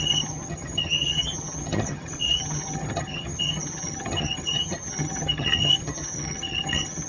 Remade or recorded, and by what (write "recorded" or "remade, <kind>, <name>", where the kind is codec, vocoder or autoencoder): remade, vocoder, HiFi-GAN